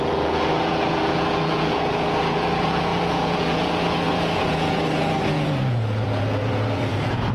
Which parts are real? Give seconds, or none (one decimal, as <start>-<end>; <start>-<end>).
none